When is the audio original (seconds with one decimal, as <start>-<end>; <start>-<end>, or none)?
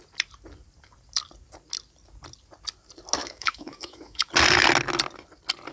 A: 0.0-3.2; 4.3-5.7